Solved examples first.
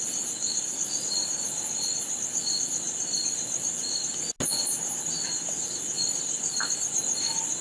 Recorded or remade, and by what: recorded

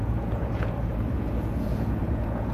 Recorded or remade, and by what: remade, vocoder, Vocos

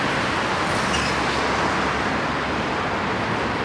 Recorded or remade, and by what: recorded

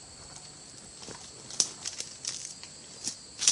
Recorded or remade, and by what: recorded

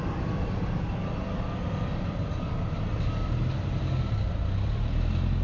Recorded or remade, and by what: recorded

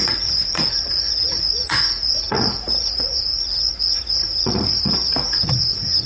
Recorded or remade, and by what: remade, vocoder, Vocos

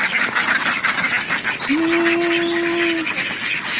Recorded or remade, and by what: recorded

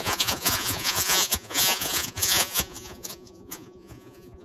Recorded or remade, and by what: remade, vocoder, Vocos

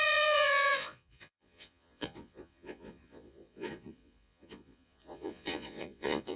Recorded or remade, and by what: remade, vocoder, Vocos